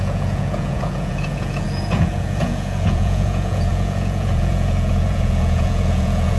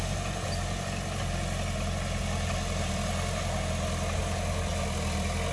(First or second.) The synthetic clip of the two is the first